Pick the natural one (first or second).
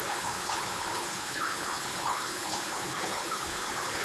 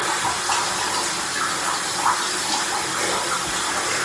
second